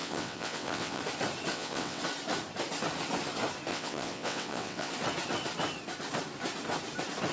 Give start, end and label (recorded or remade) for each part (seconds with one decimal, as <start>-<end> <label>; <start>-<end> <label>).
0.0-1.0 remade; 1.0-1.5 recorded; 1.5-2.0 remade; 2.0-3.7 recorded; 3.7-4.9 remade; 4.9-7.3 recorded